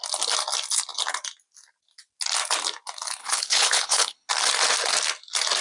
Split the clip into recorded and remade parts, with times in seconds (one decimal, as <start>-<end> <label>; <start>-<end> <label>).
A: 0.0-3.2 recorded; 3.2-4.3 remade; 4.3-5.6 recorded